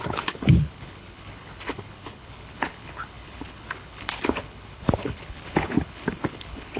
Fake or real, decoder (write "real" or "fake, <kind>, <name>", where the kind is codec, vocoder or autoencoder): fake, codec, HILCodec